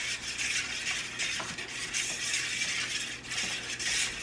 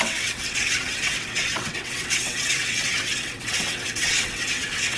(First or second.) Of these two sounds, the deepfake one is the second